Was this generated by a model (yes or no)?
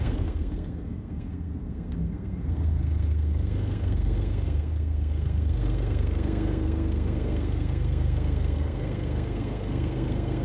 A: yes